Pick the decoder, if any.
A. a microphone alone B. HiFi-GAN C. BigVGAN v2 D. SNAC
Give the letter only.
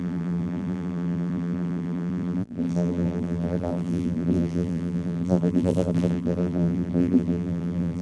C